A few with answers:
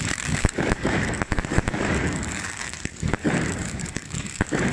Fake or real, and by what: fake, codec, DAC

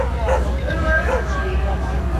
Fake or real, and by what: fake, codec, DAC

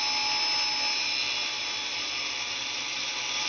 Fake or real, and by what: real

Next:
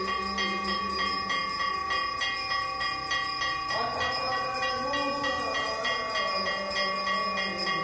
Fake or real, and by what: real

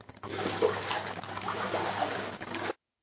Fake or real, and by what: fake, codec, DAC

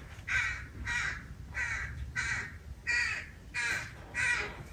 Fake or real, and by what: real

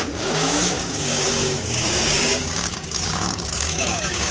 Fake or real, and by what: fake, codec, DAC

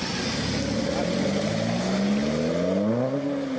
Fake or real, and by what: real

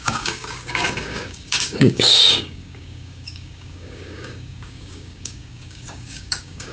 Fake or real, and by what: fake, codec, DAC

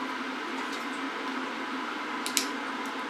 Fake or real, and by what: real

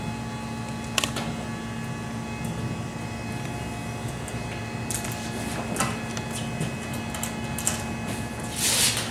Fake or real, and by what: real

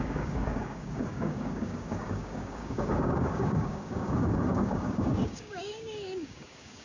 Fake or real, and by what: fake, codec, DAC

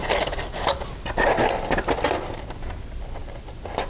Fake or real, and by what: real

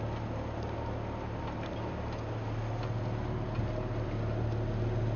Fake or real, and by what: real